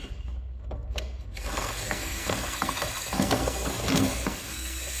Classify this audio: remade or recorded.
remade